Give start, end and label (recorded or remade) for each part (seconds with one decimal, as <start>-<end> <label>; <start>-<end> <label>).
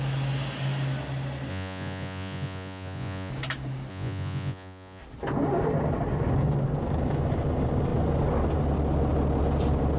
0.0-1.5 recorded; 1.5-3.3 remade; 3.3-3.9 recorded; 3.9-5.0 remade; 5.0-10.0 recorded